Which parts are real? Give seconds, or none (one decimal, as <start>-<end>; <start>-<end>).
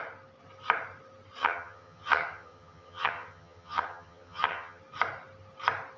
0.0-1.4; 4.8-6.0